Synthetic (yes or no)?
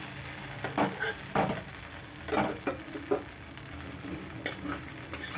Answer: no